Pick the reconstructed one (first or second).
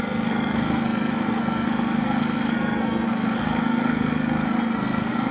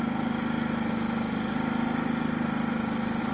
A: first